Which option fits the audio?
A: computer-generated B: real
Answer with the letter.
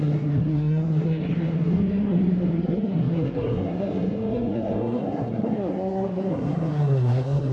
A